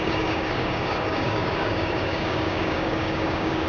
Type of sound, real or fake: fake